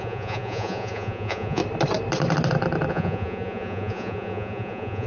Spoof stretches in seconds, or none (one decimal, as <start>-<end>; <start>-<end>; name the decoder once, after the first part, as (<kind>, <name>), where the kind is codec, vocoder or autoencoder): 0.0-1.6 (vocoder, Vocos); 2.9-5.1